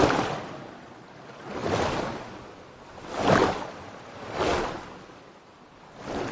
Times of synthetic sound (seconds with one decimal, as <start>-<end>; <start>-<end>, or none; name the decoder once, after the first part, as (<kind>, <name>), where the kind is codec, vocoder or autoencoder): none